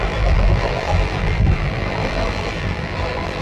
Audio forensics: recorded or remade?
remade